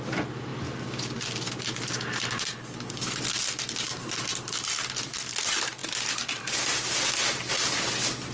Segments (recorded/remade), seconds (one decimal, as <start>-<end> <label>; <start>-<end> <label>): 0.0-8.3 recorded